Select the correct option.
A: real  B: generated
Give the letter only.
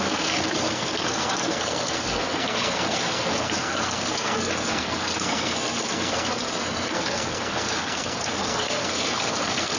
B